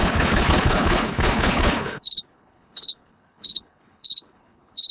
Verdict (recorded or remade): remade